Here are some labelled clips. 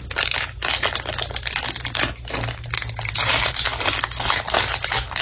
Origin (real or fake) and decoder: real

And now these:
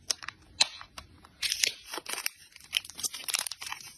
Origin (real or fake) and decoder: fake, vocoder, BigVGAN v2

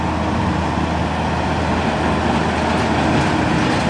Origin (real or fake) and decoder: real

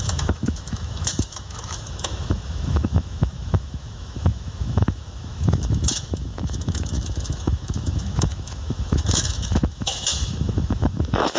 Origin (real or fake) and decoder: fake, autoencoder, DAC-VAE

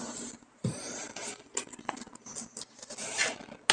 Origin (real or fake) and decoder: real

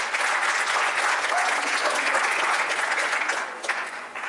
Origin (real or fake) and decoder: fake, vocoder, Vocos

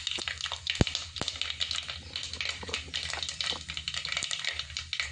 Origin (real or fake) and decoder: real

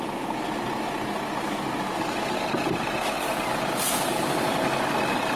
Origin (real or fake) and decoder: real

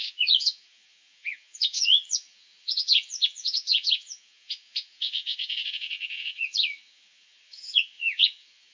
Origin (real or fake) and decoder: fake, vocoder, Vocos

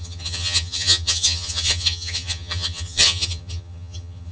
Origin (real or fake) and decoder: fake, vocoder, HiFi-GAN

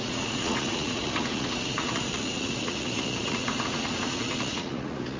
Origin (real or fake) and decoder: fake, vocoder, Vocos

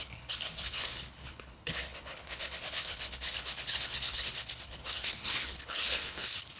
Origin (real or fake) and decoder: fake, codec, HILCodec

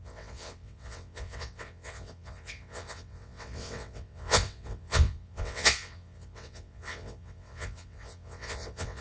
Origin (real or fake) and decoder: fake, vocoder, WaveNeXt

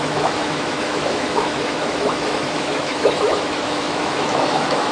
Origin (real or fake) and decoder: fake, autoencoder, DAC-VAE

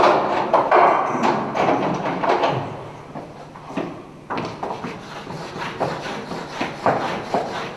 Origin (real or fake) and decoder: real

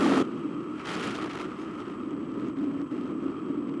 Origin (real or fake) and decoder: real